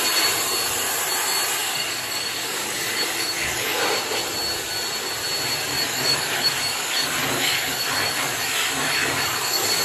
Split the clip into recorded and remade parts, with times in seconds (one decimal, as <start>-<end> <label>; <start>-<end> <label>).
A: 0.0-1.6 recorded; 1.6-3.8 remade; 3.8-5.7 recorded; 5.7-9.8 remade